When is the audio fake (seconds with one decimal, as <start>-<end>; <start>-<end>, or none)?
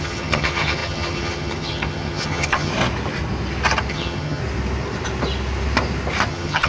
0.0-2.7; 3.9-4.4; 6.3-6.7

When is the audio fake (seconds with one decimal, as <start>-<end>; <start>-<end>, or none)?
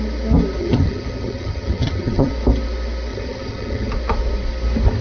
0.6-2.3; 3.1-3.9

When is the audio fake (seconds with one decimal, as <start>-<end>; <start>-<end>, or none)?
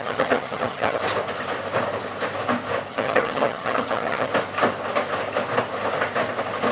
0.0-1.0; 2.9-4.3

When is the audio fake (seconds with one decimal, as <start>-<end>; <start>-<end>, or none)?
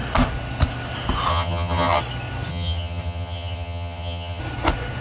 1.3-2.0; 2.5-4.4